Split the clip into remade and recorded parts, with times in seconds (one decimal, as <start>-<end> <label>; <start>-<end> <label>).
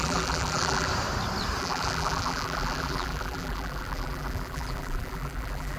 0.0-0.9 remade; 0.9-1.6 recorded; 1.6-5.8 remade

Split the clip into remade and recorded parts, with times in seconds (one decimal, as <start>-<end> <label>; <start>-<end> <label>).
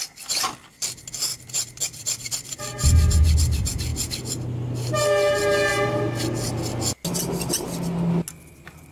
0.0-1.3 recorded; 1.3-2.6 remade; 2.6-8.9 recorded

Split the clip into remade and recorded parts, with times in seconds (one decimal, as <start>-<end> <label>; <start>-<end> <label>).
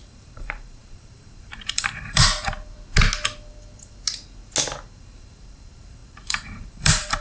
0.0-2.3 remade; 2.3-5.0 recorded; 5.0-7.2 remade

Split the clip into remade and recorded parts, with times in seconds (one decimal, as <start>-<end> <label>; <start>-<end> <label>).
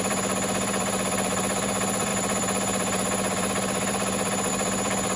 0.0-5.2 remade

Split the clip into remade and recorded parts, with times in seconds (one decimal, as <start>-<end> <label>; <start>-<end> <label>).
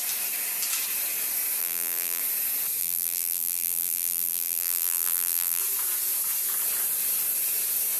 0.0-1.6 recorded; 1.6-2.2 remade; 2.2-2.8 recorded; 2.8-5.6 remade; 5.6-8.0 recorded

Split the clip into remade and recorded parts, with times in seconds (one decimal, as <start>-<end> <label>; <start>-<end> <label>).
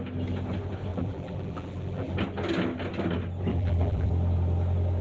0.0-0.9 recorded; 0.9-2.1 remade; 2.1-3.5 recorded; 3.5-4.1 remade; 4.1-5.0 recorded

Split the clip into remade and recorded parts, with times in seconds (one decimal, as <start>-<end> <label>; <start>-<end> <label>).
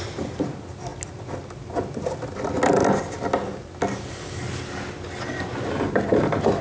0.0-6.6 recorded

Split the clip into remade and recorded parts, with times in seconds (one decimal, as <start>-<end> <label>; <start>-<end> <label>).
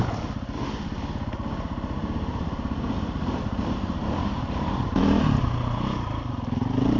0.0-2.0 recorded; 2.0-6.2 remade; 6.2-7.0 recorded